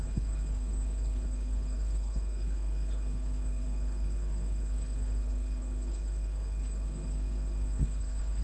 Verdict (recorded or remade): remade